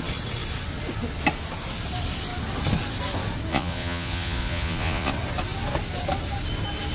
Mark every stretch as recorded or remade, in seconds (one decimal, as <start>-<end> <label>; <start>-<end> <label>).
0.0-3.5 recorded; 3.5-5.1 remade; 5.1-6.9 recorded